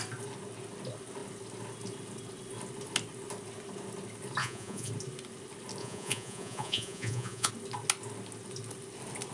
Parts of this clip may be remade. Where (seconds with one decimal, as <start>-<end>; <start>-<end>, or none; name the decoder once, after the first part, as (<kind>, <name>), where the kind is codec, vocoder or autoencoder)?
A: 4.4-4.9 (vocoder, Vocos); 5.8-7.5